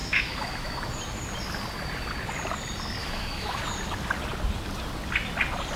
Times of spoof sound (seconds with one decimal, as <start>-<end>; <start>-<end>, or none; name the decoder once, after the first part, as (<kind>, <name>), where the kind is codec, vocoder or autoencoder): 0.0-0.8 (autoencoder, DAC-VAE); 3.0-3.6